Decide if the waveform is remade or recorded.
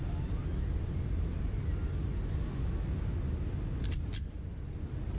recorded